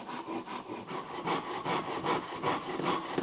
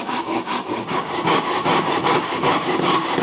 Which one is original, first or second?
first